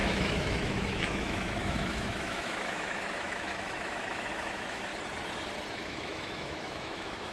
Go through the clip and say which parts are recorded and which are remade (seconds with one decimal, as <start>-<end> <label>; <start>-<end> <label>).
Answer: 0.0-4.9 remade; 4.9-5.7 recorded; 5.7-7.3 remade